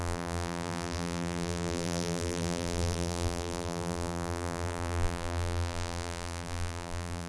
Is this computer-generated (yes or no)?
yes